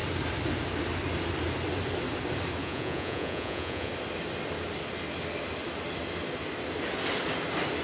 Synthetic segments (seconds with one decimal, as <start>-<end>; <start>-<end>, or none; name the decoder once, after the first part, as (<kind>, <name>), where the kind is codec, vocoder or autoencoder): 2.6-3.9 (vocoder, Vocos)